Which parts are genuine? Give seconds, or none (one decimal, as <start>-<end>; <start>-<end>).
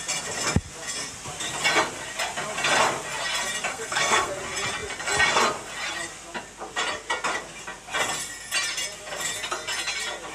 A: 0.0-3.7; 4.3-10.3